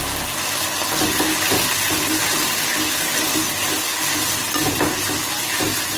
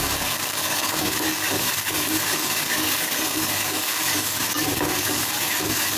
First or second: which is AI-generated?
second